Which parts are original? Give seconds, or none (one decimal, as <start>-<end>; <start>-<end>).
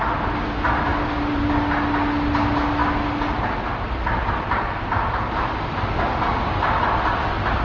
0.0-0.9; 1.5-7.6